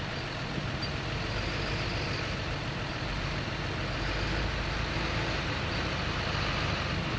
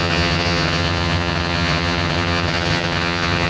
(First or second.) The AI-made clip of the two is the second